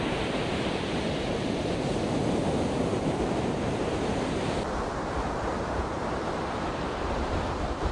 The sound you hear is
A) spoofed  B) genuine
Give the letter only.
A